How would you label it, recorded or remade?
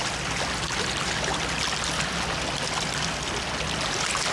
recorded